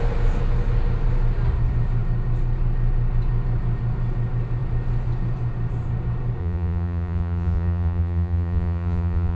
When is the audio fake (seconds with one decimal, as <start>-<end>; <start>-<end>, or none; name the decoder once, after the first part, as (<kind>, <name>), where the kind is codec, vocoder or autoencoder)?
6.4-9.4 (vocoder, Vocos)